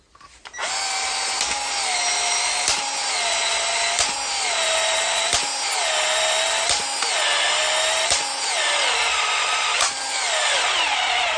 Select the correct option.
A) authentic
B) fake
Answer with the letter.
A